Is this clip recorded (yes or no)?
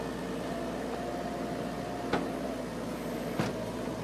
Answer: yes